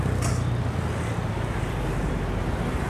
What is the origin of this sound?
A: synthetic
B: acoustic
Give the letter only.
B